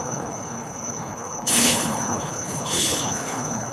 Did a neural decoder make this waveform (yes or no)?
yes